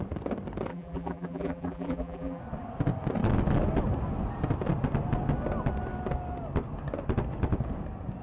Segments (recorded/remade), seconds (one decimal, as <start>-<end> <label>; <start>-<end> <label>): 0.0-0.7 recorded; 0.7-2.4 remade; 2.4-8.2 recorded